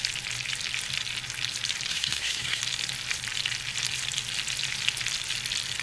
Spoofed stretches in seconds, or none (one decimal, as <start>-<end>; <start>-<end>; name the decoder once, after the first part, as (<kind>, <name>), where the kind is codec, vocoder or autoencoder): 1.9-2.6 (codec, SNAC)